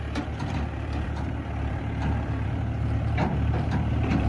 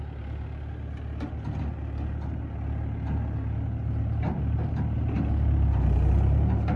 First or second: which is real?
second